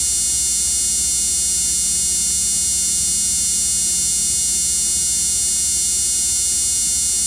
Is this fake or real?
real